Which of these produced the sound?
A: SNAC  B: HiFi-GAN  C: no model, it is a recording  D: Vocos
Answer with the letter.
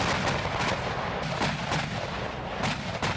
C